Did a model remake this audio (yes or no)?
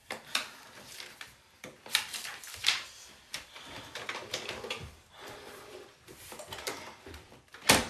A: yes